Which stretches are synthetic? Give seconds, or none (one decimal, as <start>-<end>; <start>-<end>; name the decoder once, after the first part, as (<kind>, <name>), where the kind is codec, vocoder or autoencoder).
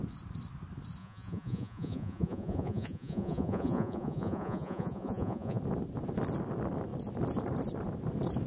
1.0-5.6 (vocoder, Vocos)